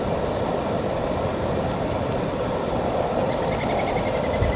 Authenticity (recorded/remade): recorded